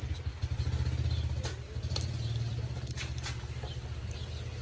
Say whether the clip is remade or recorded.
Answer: recorded